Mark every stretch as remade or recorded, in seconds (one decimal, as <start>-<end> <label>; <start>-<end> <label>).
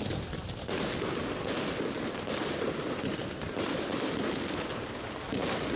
0.0-5.8 recorded